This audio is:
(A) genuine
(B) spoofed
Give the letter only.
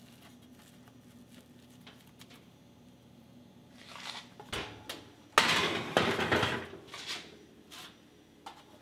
A